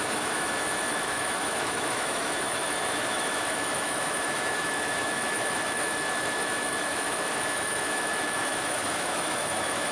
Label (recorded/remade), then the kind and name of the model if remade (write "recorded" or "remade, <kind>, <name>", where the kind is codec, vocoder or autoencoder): remade, autoencoder, DAC-VAE